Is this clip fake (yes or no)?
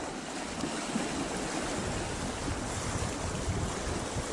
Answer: no